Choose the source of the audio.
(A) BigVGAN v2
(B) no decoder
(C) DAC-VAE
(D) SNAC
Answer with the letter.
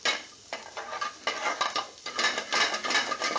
B